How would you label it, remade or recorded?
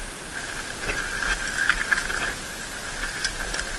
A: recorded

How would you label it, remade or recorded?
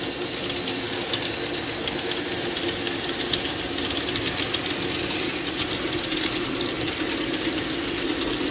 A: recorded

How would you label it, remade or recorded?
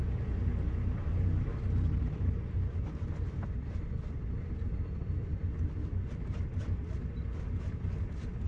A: recorded